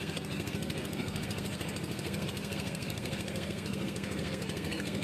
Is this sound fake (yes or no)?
yes